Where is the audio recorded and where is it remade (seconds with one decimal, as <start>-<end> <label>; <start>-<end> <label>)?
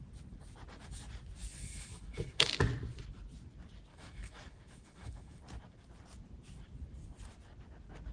0.0-1.5 recorded; 1.5-2.5 remade; 2.5-3.9 recorded; 3.9-5.4 remade; 5.4-8.1 recorded